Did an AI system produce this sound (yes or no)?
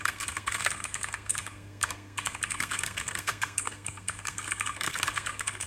yes